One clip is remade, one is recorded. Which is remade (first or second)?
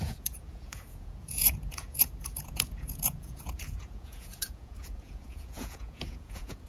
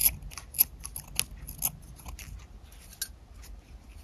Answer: first